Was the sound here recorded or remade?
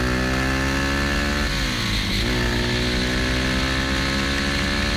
recorded